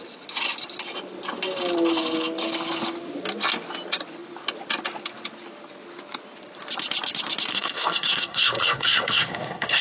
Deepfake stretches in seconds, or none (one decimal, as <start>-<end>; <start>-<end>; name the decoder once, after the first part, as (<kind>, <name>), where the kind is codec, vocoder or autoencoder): 7.5-9.8 (codec, SNAC)